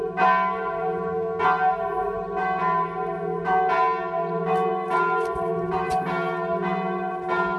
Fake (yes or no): no